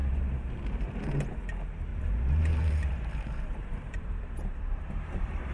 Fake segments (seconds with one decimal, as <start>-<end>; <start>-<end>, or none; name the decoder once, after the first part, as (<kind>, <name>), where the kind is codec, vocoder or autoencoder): 0.0-1.0 (vocoder, BigVGAN v2); 1.9-5.5